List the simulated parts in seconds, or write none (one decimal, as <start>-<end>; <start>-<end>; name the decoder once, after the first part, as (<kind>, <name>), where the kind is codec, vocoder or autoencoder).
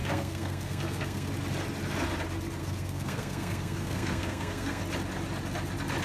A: 0.0-1.3 (codec, SNAC); 2.6-4.8